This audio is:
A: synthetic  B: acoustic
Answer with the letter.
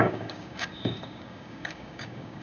A